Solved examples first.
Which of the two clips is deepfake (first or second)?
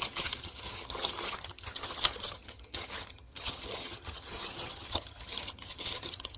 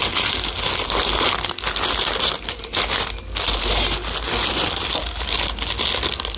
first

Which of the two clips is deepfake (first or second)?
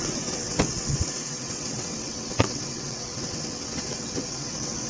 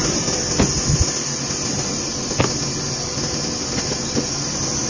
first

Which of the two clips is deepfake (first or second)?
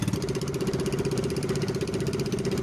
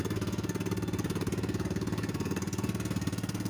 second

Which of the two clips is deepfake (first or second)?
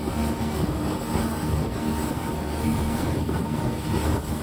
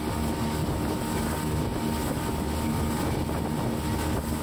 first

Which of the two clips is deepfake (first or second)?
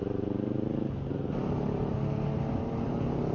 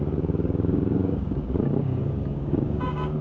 second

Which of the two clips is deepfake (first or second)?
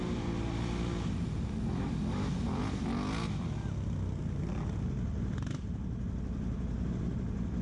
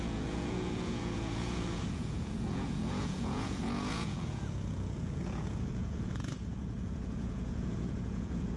second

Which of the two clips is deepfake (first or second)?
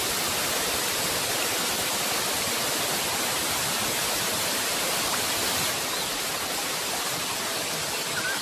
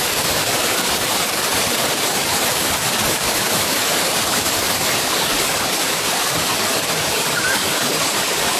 second